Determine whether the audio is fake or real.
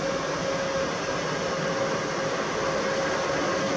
real